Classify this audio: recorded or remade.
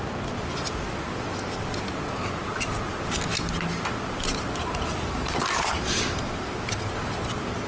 recorded